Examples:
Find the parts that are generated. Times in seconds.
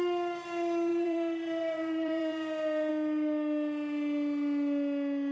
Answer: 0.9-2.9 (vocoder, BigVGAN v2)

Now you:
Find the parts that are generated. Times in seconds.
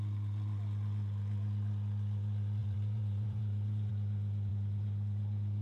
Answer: 2.6-3.9 (vocoder, BigVGAN v2); 4.5-5.6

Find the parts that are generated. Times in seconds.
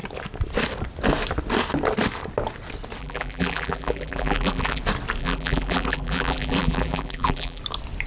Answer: 3.0-4.8 (vocoder, BigVGAN v2); 5.2-7.6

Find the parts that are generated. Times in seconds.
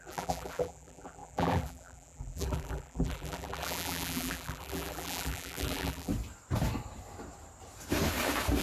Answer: 0.0-6.1 (vocoder, BigVGAN v2)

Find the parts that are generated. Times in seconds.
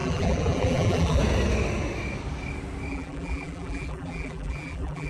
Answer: 0.0-1.2 (vocoder, BigVGAN v2); 2.9-5.1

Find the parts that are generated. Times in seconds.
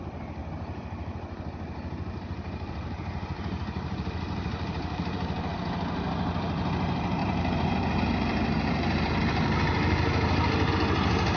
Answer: 0.4-5.5 (vocoder, BigVGAN v2); 7.2-10.7